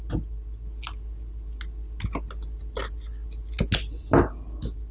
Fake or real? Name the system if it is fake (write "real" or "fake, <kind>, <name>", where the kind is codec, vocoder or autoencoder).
real